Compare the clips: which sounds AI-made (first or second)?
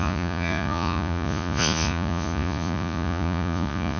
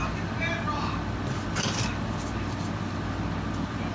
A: first